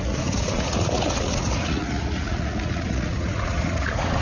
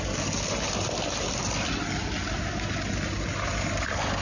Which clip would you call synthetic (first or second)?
first